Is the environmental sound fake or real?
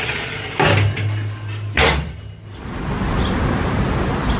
fake